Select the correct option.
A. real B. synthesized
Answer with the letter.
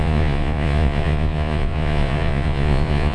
B